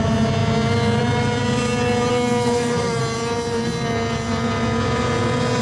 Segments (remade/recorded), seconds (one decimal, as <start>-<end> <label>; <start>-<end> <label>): 0.0-2.1 recorded; 2.1-3.0 remade; 3.0-5.6 recorded